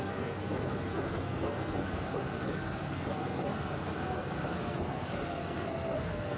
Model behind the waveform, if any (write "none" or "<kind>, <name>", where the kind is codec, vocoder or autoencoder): codec, SNAC